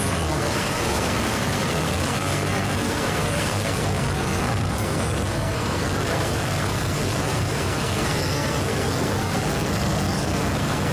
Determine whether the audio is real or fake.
fake